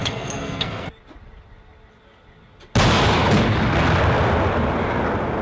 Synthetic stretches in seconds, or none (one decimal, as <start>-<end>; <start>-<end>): 0.0-0.9